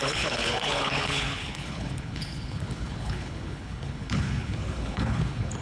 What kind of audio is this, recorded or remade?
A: remade